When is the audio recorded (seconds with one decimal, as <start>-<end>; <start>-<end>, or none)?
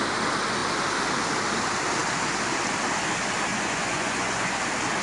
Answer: 0.0-3.5; 4.6-5.0